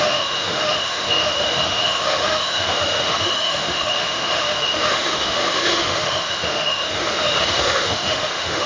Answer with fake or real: fake